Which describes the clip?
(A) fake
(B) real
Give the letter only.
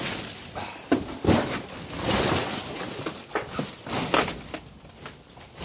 B